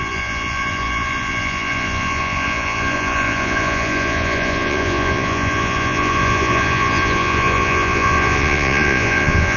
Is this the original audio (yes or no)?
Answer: no